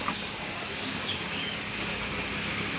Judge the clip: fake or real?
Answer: fake